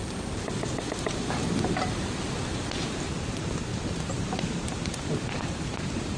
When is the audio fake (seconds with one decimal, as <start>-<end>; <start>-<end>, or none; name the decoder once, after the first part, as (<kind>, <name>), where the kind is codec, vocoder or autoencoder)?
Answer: 0.9-3.7 (vocoder, BigVGAN v2); 4.2-6.2